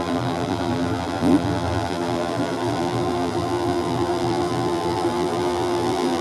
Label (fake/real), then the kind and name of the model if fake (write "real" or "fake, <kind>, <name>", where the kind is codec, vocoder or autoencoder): fake, vocoder, BigVGAN v2